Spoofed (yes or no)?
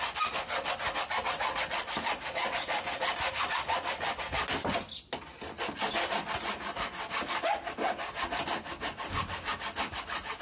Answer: no